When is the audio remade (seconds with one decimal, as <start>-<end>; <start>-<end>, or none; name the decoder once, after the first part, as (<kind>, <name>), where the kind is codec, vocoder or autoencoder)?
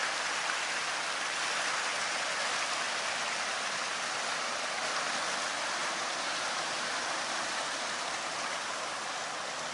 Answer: 5.8-8.2 (vocoder, BigVGAN v2)